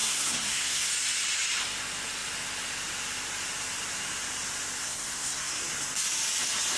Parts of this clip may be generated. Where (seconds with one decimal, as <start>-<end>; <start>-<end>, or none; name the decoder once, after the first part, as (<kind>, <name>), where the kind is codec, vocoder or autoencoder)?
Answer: 0.0-0.9 (codec, SNAC); 4.8-5.6